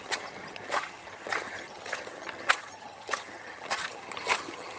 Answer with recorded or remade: remade